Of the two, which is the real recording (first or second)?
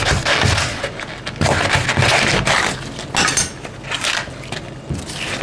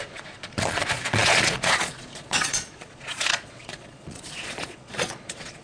first